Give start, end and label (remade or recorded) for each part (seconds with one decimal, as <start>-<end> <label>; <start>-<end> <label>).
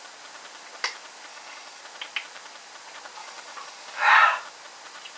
0.0-1.3 recorded; 1.3-1.8 remade; 1.8-3.2 recorded; 3.2-4.1 remade; 4.1-5.2 recorded